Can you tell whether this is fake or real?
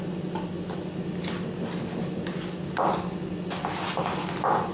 real